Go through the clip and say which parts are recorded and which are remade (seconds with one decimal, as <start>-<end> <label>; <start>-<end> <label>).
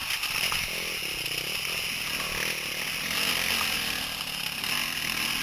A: 0.0-5.4 recorded